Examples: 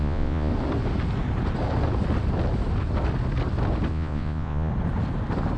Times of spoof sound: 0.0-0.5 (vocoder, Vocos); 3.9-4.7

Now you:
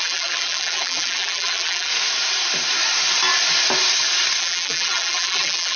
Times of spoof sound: 0.0-1.9 (vocoder, BigVGAN v2); 4.4-5.8

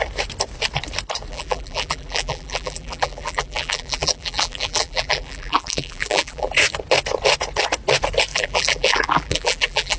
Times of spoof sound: 1.3-6.5 (vocoder, BigVGAN v2); 8.3-10.0

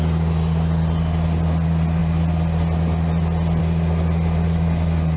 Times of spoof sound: none